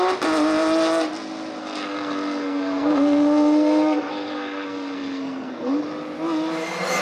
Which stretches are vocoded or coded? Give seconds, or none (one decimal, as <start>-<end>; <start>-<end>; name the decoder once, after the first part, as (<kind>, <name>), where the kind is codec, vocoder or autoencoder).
1.6-5.8 (codec, SNAC)